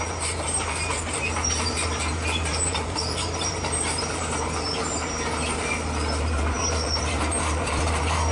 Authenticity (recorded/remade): remade